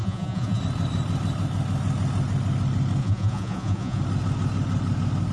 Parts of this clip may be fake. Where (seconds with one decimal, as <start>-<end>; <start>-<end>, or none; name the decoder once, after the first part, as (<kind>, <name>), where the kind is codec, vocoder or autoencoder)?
0.0-0.6 (vocoder, Vocos); 3.0-4.0